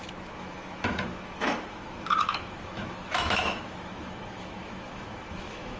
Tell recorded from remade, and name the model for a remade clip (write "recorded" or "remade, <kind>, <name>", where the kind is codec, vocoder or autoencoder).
remade, autoencoder, DAC-VAE